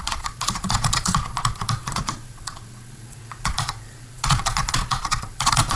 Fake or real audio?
fake